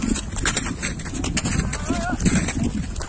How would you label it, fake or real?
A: real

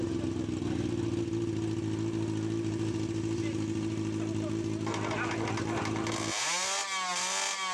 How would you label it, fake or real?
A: real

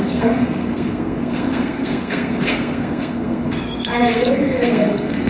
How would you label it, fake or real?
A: fake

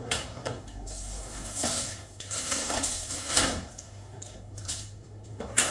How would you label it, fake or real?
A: fake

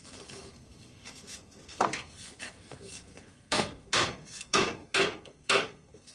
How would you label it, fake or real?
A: fake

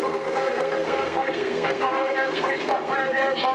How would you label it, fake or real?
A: fake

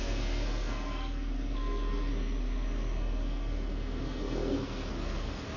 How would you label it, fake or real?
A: fake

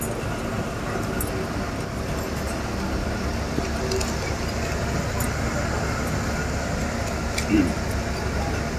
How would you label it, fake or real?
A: real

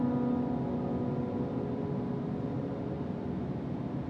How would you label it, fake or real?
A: real